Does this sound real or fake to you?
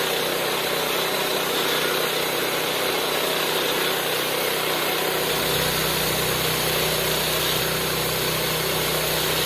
real